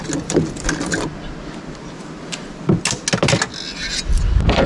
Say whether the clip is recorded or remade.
recorded